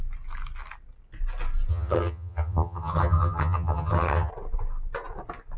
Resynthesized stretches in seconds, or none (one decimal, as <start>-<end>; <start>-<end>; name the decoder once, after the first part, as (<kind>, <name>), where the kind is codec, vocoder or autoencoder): 1.7-4.3 (vocoder, HiFi-GAN)